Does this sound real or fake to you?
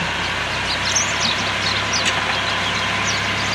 real